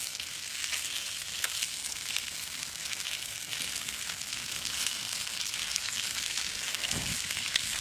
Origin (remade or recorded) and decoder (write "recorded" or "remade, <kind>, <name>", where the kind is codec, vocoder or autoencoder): remade, codec, SNAC